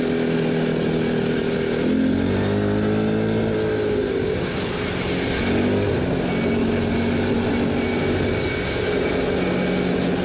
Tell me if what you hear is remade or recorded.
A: recorded